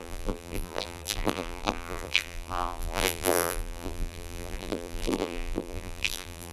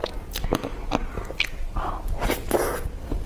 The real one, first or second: second